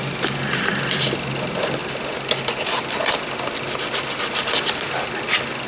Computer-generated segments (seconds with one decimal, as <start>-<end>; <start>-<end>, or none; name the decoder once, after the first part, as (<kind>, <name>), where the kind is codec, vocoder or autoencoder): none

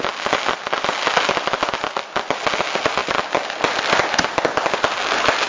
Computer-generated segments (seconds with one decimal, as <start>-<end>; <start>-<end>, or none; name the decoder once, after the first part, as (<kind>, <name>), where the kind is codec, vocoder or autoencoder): none

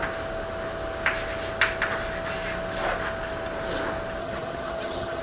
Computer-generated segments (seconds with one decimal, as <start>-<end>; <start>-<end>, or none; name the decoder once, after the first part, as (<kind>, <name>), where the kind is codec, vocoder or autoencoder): 4.2-5.2 (vocoder, HiFi-GAN)